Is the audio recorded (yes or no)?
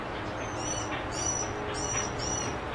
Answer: yes